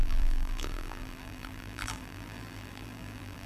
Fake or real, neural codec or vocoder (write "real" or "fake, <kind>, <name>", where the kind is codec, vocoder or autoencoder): fake, vocoder, BigVGAN v2